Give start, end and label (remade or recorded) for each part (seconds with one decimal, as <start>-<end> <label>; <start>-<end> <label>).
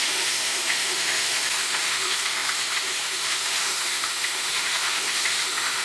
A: 0.0-5.8 remade